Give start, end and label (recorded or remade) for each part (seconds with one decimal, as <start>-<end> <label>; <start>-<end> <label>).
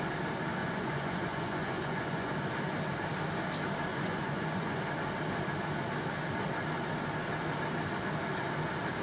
0.0-0.6 recorded; 0.6-2.3 remade; 2.3-3.9 recorded; 3.9-4.8 remade; 4.8-9.0 recorded